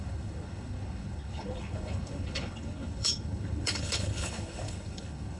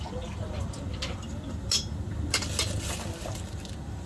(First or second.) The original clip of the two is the second